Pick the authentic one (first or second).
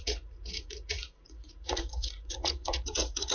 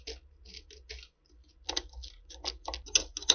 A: second